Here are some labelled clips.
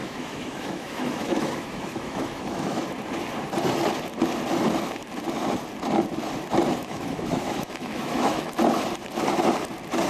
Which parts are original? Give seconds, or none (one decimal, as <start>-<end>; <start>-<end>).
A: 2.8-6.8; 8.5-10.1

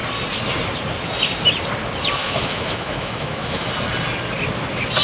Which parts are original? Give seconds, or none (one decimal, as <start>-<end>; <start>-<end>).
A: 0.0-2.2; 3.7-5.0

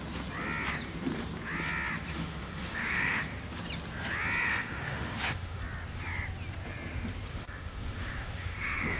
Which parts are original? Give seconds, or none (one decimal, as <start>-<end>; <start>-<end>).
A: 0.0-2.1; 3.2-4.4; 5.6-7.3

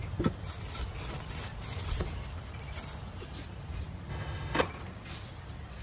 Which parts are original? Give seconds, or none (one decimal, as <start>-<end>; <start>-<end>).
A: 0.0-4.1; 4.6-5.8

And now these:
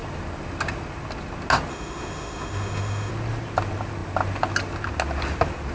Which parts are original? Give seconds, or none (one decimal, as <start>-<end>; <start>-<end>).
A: 0.0-1.7; 3.1-5.7

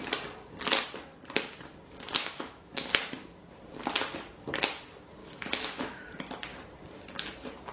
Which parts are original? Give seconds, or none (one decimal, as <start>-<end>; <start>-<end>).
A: 0.0-2.2; 2.9-5.2; 6.0-7.7